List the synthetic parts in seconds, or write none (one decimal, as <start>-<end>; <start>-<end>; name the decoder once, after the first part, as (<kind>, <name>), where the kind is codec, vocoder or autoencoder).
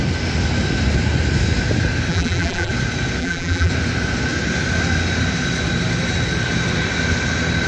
2.1-2.7 (vocoder, BigVGAN v2); 3.2-3.7